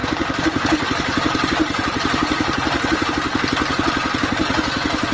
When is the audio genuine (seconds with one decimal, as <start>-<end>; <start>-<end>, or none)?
3.1-5.1